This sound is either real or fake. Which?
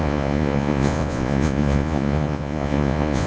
fake